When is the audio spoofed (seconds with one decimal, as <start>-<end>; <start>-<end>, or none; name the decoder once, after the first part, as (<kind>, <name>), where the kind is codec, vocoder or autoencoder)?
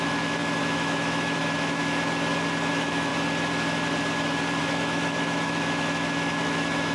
0.0-1.8 (autoencoder, DAC-VAE); 2.7-3.1; 4.6-6.9